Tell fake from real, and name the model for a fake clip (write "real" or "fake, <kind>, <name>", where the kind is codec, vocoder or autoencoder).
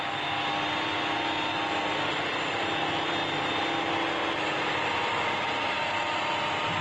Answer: real